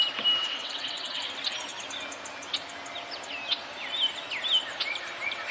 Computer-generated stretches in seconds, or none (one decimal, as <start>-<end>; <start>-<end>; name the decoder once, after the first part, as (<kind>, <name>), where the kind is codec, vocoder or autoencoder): 0.4-1.2 (vocoder, WaveNeXt)